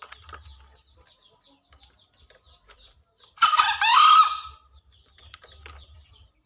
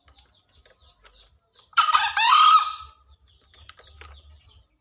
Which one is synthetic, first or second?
first